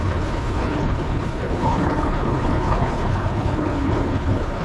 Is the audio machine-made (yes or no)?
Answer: yes